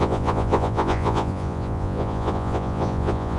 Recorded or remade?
remade